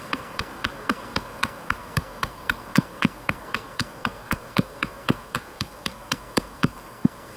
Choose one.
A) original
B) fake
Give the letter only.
B